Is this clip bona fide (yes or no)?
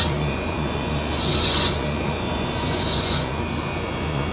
no